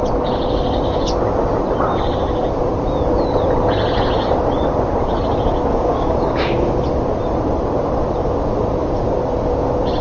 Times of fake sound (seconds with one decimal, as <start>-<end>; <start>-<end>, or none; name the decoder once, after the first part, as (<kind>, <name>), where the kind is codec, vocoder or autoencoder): 5.7-6.7 (codec, DAC)